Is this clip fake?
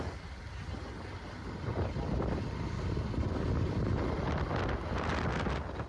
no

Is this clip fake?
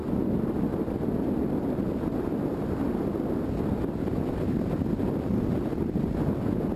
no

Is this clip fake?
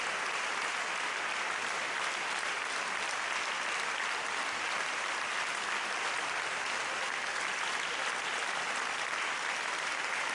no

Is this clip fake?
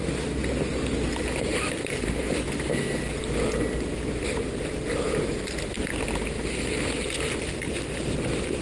no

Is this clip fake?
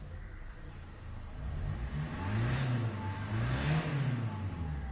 no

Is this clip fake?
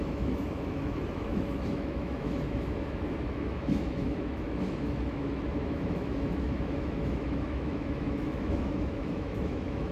yes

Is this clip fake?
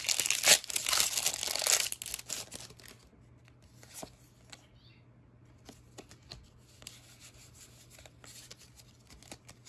no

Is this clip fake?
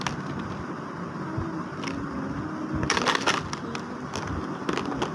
no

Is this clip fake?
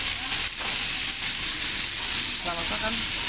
no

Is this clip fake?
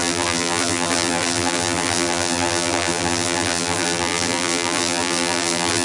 yes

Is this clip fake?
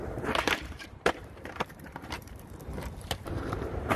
yes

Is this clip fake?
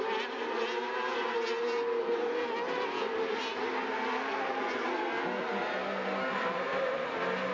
no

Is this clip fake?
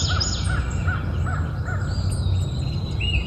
no